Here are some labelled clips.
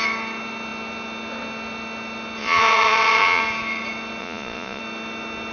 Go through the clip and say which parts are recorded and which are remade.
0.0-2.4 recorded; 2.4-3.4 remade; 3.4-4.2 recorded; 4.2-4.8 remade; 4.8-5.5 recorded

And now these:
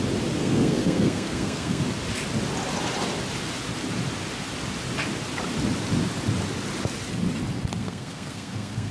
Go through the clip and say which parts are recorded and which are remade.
0.0-0.4 recorded; 0.4-1.8 remade; 1.8-7.8 recorded; 7.8-8.9 remade

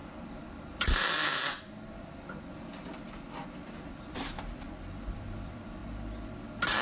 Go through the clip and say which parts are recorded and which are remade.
0.0-0.6 recorded; 0.6-5.8 remade; 5.8-6.8 recorded

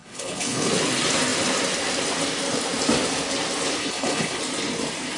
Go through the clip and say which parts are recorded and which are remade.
0.0-0.7 remade; 0.7-3.8 recorded; 3.8-4.4 remade; 4.4-5.2 recorded

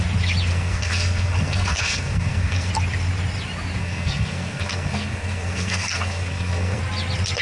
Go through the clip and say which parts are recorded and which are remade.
0.0-0.5 recorded; 0.5-2.7 remade; 2.7-3.8 recorded; 3.8-6.8 remade; 6.8-7.4 recorded